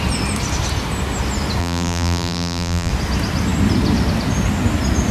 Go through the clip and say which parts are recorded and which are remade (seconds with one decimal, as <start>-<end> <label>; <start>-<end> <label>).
0.0-1.6 recorded; 1.6-2.9 remade; 2.9-5.1 recorded

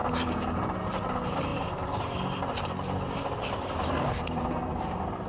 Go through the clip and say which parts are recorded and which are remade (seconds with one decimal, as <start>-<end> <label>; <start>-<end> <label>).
0.0-5.3 remade